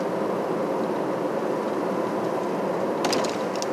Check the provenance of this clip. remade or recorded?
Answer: recorded